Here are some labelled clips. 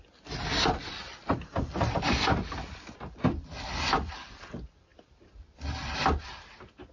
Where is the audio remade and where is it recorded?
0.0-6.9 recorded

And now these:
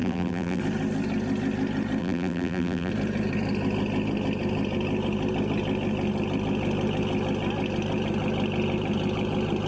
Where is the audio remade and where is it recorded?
0.0-0.6 remade; 0.6-2.0 recorded; 2.0-2.9 remade; 2.9-9.7 recorded